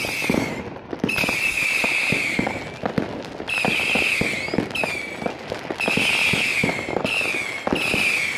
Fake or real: real